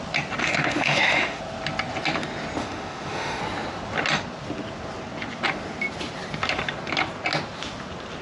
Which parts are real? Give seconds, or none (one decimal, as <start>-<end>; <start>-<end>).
0.0-0.4; 1.4-2.6; 3.4-8.2